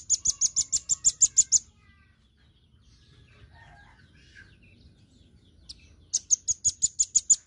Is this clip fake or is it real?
real